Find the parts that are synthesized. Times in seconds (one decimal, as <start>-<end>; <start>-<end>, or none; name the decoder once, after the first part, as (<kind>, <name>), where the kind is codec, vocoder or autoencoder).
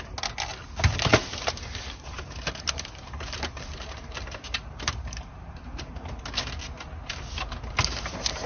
1.1-6.2 (vocoder, BigVGAN v2)